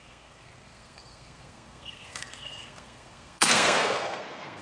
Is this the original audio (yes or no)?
no